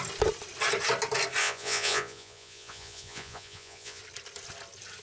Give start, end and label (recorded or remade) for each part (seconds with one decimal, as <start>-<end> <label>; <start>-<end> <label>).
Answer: 0.0-1.4 recorded; 1.4-4.0 remade; 4.0-5.0 recorded